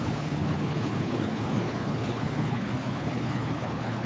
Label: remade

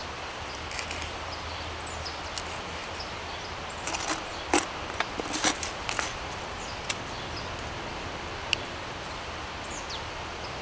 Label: recorded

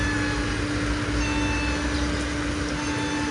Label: recorded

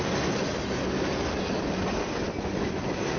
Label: recorded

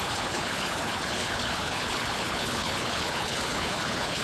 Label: remade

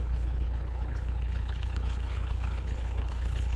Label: remade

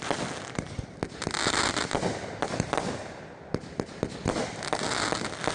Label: recorded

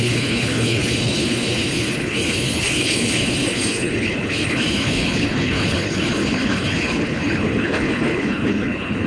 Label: remade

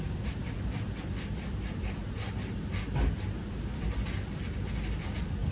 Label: recorded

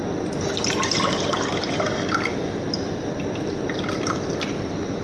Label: recorded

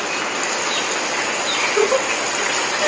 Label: recorded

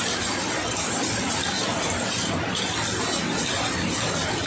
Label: recorded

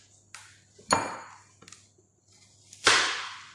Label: recorded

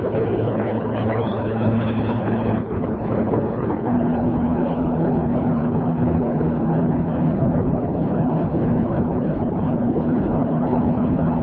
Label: remade